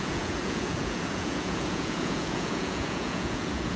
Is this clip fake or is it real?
fake